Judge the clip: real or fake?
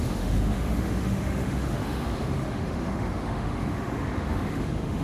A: fake